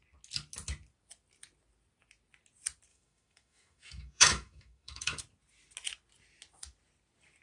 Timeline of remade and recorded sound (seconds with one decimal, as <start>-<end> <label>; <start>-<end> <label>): 0.0-2.9 recorded; 2.9-5.2 remade; 5.2-7.4 recorded